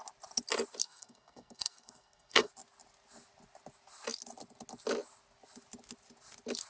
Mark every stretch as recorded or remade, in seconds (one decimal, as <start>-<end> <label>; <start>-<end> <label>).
0.0-0.8 recorded; 0.8-2.5 remade; 2.5-6.7 recorded